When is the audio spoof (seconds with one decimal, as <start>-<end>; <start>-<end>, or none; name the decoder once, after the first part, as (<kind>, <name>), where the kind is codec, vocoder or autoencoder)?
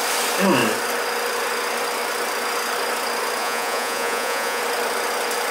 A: 3.4-4.6 (vocoder, Vocos)